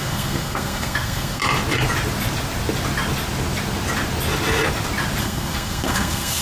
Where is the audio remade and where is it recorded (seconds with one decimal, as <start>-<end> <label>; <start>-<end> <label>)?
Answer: 0.0-1.4 remade; 1.4-5.2 recorded; 5.2-6.4 remade